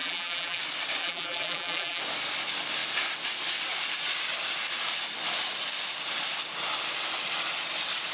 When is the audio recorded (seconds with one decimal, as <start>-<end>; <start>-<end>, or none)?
0.6-1.0; 2.0-8.1